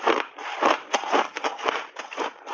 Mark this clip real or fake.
fake